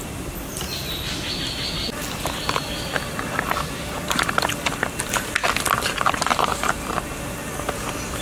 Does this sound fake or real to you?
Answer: real